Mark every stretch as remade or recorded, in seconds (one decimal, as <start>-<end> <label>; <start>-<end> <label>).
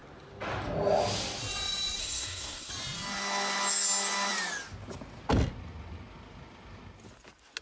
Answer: 0.0-2.0 recorded; 2.0-2.7 remade; 2.7-7.6 recorded